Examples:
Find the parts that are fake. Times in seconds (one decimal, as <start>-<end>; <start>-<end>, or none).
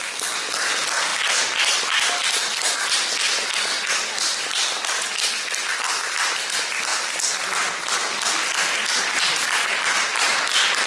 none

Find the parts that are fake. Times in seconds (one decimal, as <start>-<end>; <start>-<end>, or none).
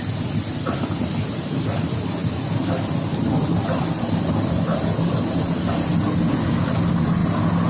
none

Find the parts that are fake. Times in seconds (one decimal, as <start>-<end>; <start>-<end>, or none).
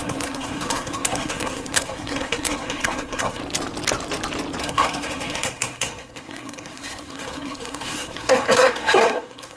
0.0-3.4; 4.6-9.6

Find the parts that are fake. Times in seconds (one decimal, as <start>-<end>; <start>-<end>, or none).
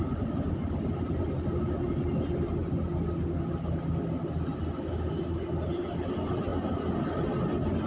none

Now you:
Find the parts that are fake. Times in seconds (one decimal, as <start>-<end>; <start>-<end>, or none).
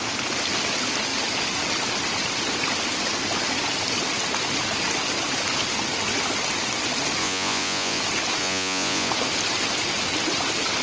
7.2-8.0; 8.4-9.1